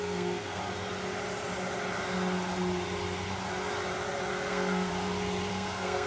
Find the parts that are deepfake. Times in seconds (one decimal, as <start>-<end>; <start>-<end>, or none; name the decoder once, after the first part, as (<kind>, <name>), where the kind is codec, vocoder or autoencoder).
0.0-0.6 (codec, SNAC); 4.3-4.9; 5.5-6.1